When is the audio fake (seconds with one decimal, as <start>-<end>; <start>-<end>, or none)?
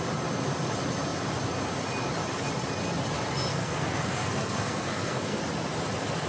3.5-5.4